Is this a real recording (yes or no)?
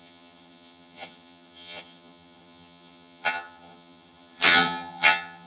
no